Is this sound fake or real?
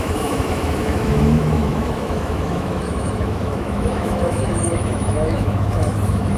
fake